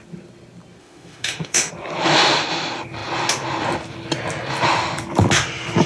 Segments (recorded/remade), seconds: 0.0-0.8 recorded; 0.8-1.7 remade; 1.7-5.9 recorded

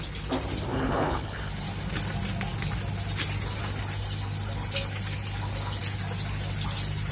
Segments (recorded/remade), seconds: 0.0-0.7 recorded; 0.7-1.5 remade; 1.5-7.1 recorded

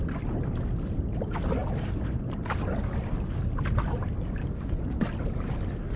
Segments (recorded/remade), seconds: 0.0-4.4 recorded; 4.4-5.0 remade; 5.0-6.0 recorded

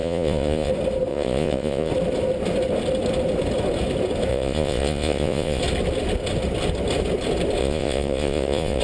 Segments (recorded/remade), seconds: 0.0-0.7 remade; 0.7-1.1 recorded; 1.1-1.9 remade; 1.9-4.3 recorded; 4.3-5.6 remade; 5.6-7.6 recorded; 7.6-8.8 remade

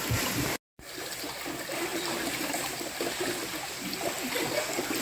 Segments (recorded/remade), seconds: 0.0-5.0 recorded

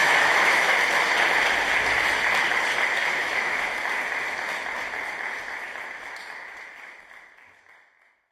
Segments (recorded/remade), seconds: 0.0-0.7 remade; 0.7-3.2 recorded; 3.2-3.8 remade; 3.8-8.3 recorded